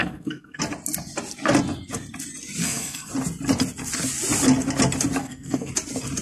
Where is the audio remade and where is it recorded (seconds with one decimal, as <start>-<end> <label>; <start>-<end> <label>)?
0.0-0.6 remade; 0.6-2.6 recorded; 2.6-3.1 remade; 3.1-5.2 recorded; 5.2-5.7 remade; 5.7-6.2 recorded